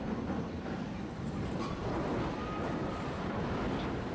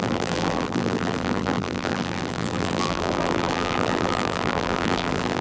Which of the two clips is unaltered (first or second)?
first